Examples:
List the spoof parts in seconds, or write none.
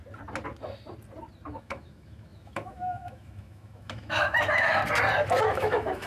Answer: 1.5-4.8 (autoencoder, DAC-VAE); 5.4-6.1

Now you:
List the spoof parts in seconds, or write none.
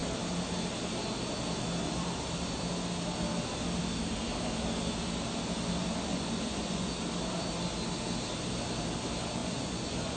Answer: 6.1-6.9 (vocoder, Vocos); 9.4-10.2